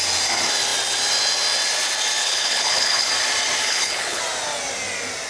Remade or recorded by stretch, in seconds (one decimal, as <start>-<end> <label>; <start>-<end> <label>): 0.0-2.2 recorded; 2.2-3.1 remade; 3.1-3.7 recorded; 3.7-4.2 remade; 4.2-5.3 recorded